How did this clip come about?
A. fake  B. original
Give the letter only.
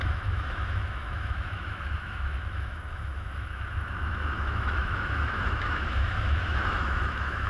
A